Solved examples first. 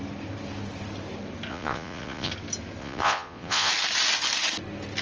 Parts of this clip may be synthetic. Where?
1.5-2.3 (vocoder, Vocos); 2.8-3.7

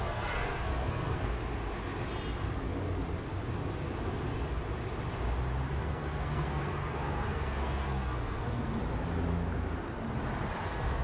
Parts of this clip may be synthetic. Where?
0.0-1.4 (codec, SNAC); 5.8-8.8; 10.6-11.0

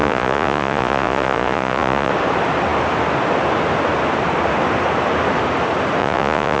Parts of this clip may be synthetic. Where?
0.0-2.1 (vocoder, Vocos); 6.0-6.6

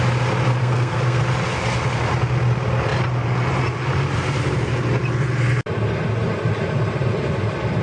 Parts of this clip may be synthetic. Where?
0.6-1.2 (codec, SNAC)

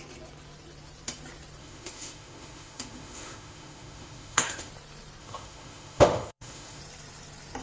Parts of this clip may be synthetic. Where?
1.6-4.7 (autoencoder, DAC-VAE); 5.2-6.8

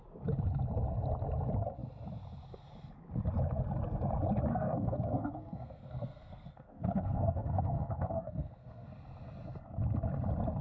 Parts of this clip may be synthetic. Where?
4.5-8.9 (codec, SNAC)

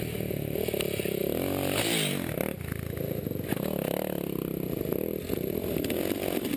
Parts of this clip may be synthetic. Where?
none

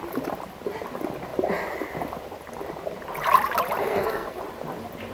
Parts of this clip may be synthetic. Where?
3.8-4.4 (codec, SNAC)